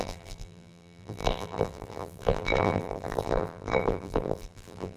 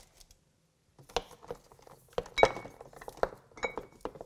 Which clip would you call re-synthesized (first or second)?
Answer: first